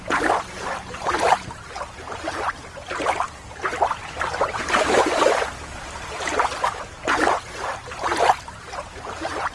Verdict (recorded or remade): remade